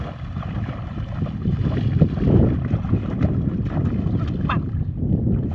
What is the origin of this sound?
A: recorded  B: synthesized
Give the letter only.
A